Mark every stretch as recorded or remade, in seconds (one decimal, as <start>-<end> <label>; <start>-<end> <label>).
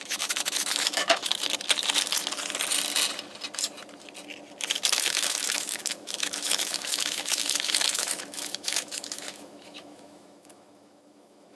0.0-1.2 remade; 1.2-4.9 recorded; 4.9-11.6 remade